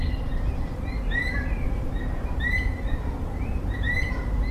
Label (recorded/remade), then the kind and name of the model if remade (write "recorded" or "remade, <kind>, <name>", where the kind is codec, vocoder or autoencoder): remade, vocoder, BigVGAN v2